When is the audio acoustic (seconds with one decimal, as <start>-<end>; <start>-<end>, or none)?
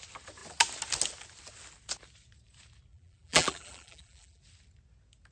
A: 0.0-2.9; 4.4-5.3